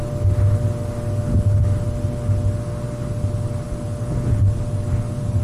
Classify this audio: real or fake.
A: real